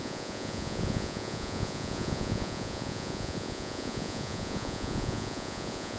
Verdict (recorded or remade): remade